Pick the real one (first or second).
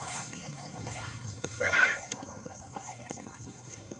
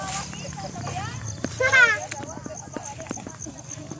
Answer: second